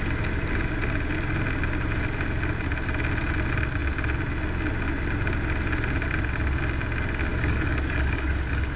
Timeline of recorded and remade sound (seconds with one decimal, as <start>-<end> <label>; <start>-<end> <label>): 0.0-7.3 recorded; 7.3-8.8 remade